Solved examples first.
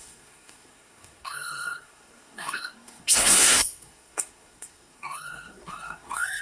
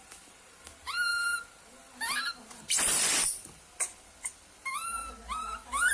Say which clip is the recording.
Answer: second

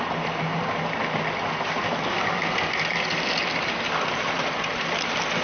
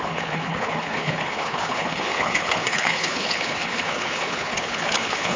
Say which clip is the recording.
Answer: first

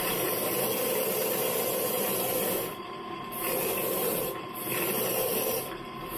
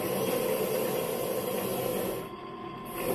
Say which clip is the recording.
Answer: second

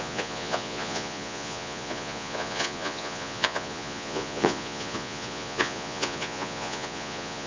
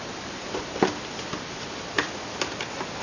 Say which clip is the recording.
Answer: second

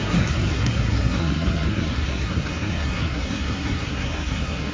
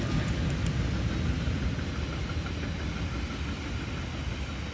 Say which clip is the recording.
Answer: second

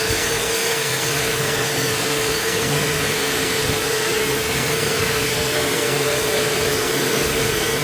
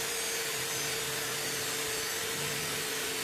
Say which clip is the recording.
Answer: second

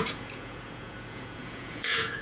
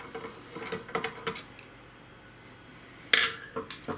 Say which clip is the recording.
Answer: second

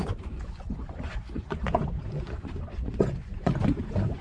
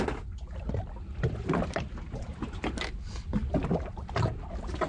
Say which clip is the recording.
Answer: second